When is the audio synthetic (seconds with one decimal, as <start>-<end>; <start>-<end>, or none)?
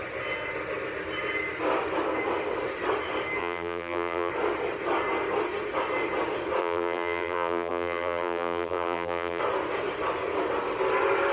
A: 3.4-4.3; 6.6-9.4